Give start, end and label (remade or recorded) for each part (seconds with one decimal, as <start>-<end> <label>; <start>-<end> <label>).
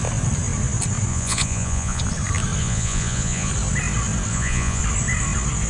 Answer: 0.0-1.1 recorded; 1.1-2.0 remade; 2.0-2.6 recorded; 2.6-3.5 remade; 3.5-4.3 recorded; 4.3-4.8 remade; 4.8-5.7 recorded